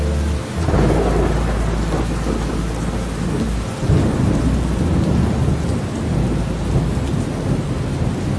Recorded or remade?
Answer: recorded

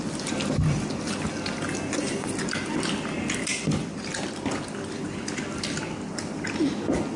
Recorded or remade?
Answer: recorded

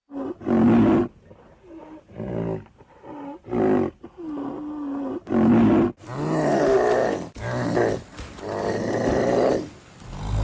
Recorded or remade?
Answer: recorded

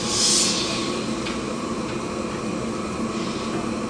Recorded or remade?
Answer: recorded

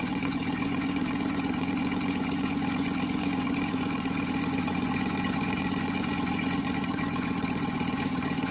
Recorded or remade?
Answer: remade